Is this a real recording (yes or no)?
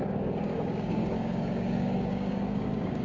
no